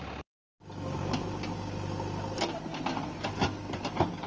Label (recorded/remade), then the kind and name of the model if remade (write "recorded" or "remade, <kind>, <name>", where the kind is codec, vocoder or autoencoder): recorded